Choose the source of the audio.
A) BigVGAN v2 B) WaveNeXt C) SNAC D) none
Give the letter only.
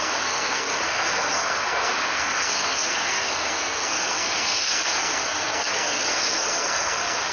C